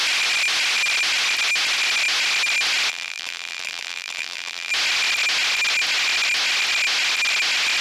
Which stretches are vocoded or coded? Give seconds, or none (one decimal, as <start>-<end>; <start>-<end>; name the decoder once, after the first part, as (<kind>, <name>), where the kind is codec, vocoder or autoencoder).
2.9-4.7 (vocoder, BigVGAN v2)

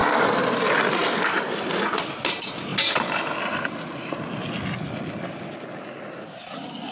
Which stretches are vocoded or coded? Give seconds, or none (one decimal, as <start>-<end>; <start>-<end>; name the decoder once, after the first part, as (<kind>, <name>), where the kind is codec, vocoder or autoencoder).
0.0-0.6 (vocoder, BigVGAN v2); 1.0-2.1

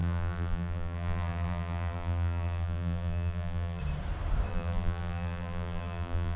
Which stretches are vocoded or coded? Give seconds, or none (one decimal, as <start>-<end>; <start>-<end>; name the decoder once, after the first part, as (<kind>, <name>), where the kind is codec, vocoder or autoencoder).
0.0-3.8 (vocoder, BigVGAN v2); 4.5-6.4

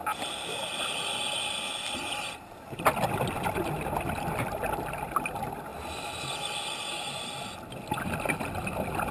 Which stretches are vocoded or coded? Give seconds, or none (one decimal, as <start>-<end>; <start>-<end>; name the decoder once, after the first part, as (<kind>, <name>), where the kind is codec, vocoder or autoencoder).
5.7-6.2 (vocoder, BigVGAN v2)